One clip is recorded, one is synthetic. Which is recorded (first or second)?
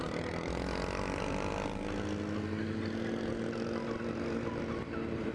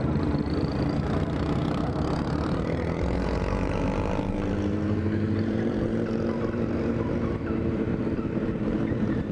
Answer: first